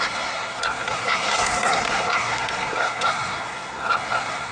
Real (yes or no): no